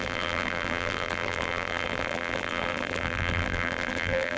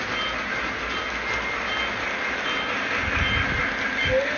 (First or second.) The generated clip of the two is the first